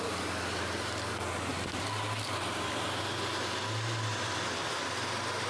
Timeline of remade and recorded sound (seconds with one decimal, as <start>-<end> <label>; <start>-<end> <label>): 0.0-5.5 recorded